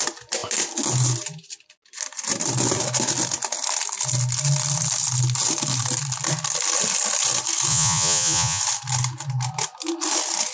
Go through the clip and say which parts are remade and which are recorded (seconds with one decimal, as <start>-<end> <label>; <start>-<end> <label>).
0.0-7.7 recorded; 7.7-8.6 remade; 8.6-10.5 recorded